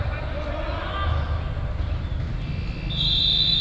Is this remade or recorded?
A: recorded